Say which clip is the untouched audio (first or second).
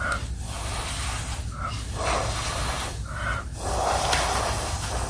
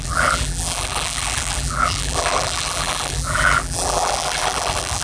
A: first